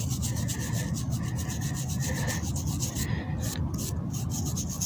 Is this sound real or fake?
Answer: real